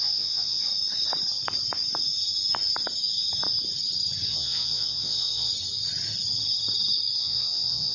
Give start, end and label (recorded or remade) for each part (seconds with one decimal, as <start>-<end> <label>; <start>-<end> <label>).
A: 0.0-0.7 remade; 0.7-4.3 recorded; 4.3-5.5 remade; 5.5-7.2 recorded; 7.2-7.9 remade